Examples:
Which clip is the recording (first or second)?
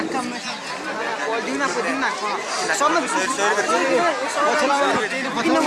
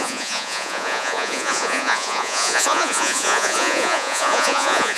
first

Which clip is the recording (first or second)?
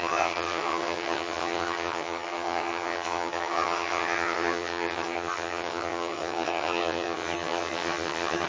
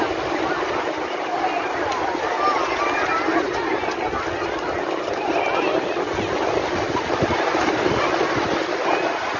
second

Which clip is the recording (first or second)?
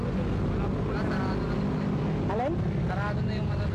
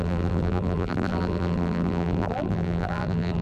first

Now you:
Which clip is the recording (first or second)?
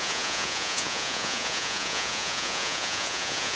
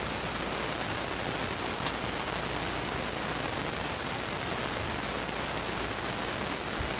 second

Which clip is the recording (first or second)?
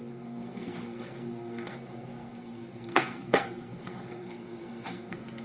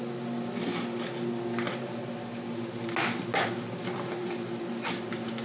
second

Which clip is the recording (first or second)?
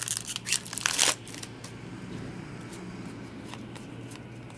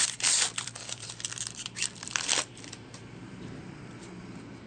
first